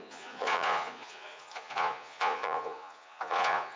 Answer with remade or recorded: remade